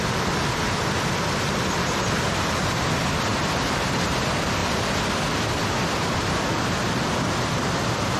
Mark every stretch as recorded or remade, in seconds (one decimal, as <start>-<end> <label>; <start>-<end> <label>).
0.0-3.3 recorded; 3.3-4.1 remade; 4.1-8.2 recorded